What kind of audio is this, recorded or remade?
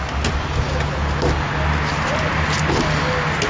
recorded